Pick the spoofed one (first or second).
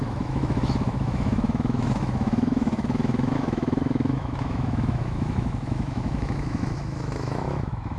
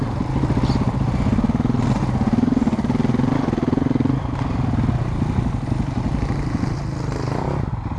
first